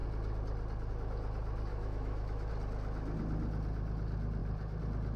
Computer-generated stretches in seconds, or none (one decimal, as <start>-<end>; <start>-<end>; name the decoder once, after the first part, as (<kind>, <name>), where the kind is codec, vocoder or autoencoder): 1.7-2.5 (autoencoder, DAC-VAE)